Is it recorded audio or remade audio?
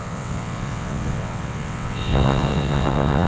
remade